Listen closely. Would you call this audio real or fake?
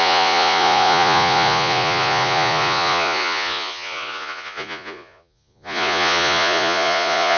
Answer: fake